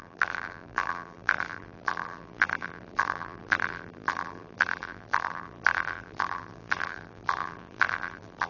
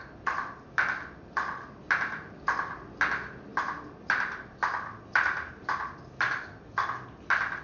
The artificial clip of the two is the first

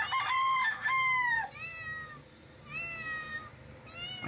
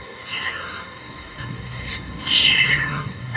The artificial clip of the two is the second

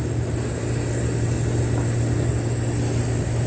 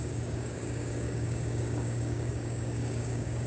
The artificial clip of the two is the second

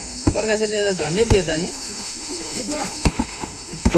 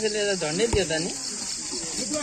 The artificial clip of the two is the first